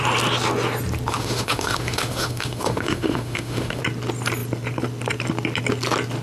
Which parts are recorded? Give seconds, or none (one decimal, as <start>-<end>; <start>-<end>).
0.0-1.1; 3.8-6.2